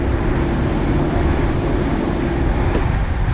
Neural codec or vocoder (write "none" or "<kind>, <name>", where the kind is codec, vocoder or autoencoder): none